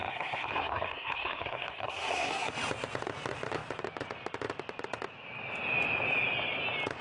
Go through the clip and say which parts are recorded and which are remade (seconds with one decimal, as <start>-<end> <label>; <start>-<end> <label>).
0.0-2.5 remade; 2.5-7.0 recorded